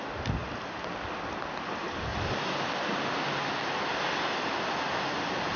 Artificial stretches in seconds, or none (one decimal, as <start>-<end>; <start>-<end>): none